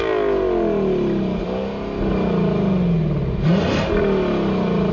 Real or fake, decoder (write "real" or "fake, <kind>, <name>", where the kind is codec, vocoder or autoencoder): real